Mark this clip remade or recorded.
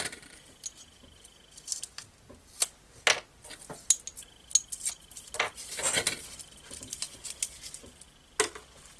recorded